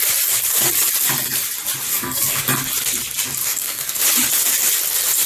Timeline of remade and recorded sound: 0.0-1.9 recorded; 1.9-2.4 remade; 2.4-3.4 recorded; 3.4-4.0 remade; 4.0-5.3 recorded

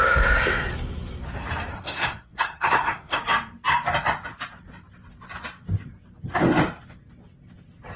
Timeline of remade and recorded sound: 0.0-1.7 recorded; 1.7-3.2 remade; 3.2-8.0 recorded

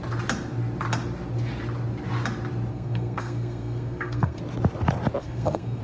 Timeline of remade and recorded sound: 0.0-2.7 recorded; 2.7-4.4 remade; 4.4-5.2 recorded; 5.2-5.8 remade

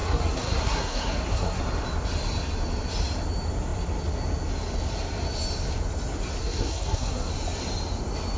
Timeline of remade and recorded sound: 0.0-1.6 remade; 1.6-6.4 recorded; 6.4-7.3 remade; 7.3-8.4 recorded

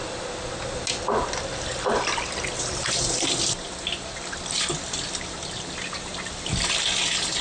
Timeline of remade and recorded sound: 0.0-7.4 recorded

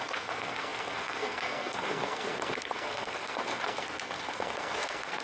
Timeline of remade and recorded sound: 0.0-5.2 remade